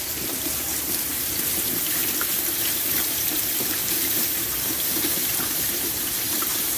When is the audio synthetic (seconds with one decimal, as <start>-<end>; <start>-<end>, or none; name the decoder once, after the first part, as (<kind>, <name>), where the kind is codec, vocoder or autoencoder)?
0.0-2.0 (vocoder, BigVGAN v2); 3.0-6.8